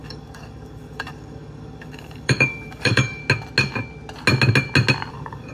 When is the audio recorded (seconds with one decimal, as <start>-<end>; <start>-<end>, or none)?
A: 3.2-5.1